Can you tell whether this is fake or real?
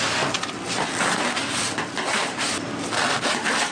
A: real